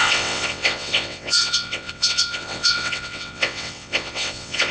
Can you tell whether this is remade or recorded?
remade